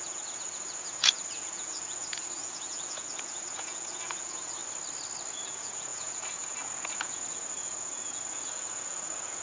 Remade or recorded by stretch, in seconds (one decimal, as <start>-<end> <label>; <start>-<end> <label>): 0.0-4.6 remade; 4.6-5.3 recorded; 5.3-9.4 remade